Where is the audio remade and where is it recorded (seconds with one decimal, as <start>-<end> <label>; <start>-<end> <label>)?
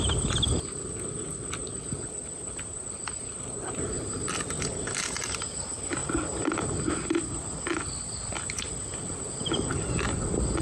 0.0-10.6 recorded